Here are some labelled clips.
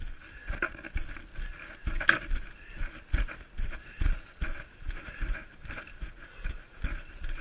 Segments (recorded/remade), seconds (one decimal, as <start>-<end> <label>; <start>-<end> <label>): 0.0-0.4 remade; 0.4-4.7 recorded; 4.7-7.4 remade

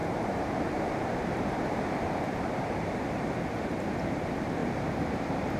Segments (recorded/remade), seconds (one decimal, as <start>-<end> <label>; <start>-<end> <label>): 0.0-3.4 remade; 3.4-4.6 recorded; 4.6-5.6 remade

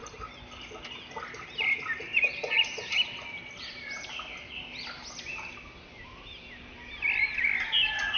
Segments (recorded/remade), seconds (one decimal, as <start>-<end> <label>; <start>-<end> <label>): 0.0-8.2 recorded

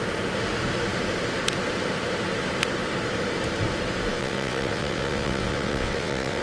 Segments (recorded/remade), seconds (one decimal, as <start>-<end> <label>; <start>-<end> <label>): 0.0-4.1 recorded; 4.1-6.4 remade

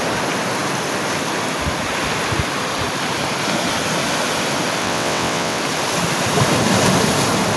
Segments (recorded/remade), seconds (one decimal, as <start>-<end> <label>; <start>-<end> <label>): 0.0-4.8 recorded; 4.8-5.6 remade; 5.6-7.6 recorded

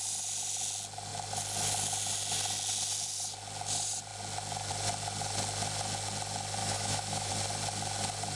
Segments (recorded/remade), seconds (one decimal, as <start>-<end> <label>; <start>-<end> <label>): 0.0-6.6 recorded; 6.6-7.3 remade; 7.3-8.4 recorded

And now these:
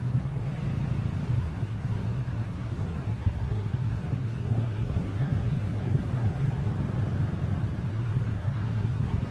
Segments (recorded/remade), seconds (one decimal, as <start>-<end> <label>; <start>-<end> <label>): 0.0-0.6 remade; 0.6-1.4 recorded; 1.4-6.7 remade; 6.7-7.9 recorded; 7.9-9.3 remade